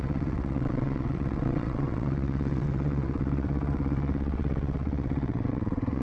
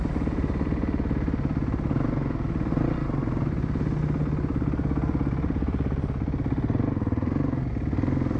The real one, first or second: second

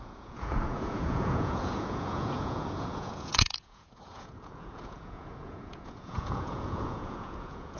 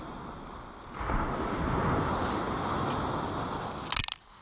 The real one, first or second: second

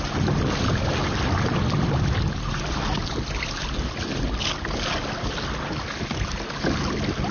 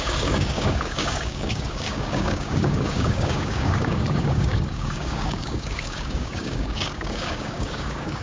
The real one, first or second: first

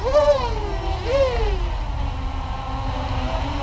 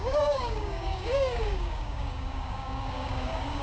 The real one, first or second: first